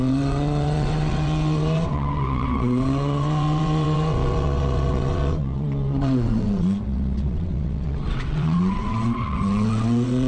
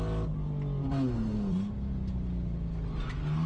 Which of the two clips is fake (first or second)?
first